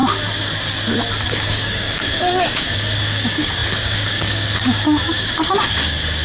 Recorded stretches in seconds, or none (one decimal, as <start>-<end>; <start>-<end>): 0.0-1.3